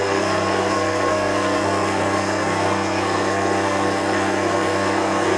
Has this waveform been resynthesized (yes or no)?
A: yes